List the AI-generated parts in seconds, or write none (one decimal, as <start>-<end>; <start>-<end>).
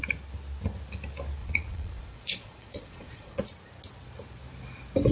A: 1.4-3.4